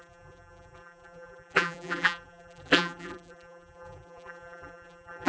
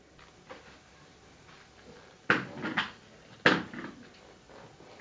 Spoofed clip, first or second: first